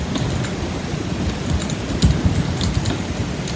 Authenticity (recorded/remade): recorded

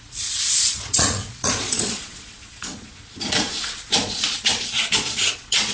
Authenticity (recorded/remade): remade